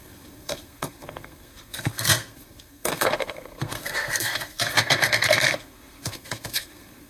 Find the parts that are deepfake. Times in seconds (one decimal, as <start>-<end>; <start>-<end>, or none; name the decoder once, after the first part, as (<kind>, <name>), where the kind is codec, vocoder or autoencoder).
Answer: 0.0-7.1 (codec, SNAC)